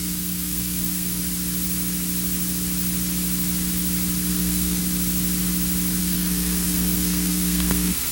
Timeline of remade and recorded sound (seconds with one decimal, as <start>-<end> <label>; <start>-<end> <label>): 0.0-1.2 remade; 1.2-4.3 recorded; 4.3-4.8 remade; 4.8-6.0 recorded; 6.0-8.1 remade